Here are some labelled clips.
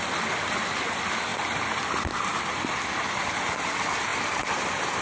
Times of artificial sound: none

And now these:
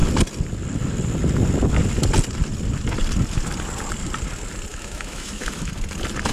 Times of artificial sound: 4.7-5.7

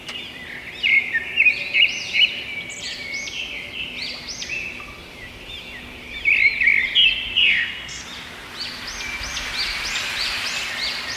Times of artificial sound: 7.4-8.0

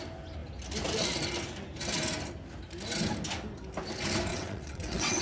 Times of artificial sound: 4.3-5.2

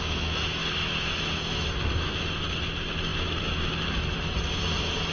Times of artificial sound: 0.0-5.1

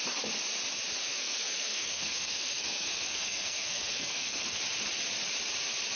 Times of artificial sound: 1.0-4.6

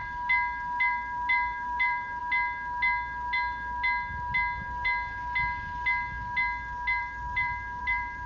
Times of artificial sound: 0.9-2.2; 7.0-8.3

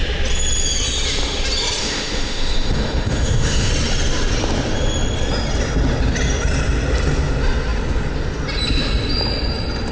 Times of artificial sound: 1.8-3.7